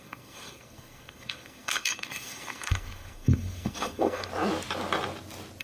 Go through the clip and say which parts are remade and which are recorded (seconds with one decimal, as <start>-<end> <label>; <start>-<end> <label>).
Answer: 0.0-4.3 remade; 4.3-5.6 recorded